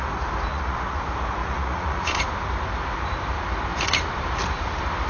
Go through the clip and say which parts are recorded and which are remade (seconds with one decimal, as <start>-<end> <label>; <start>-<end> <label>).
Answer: 0.0-0.5 recorded; 0.5-1.0 remade; 1.0-1.4 recorded; 1.4-2.2 remade; 2.2-5.1 recorded